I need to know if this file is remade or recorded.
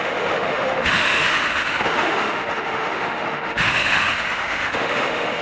remade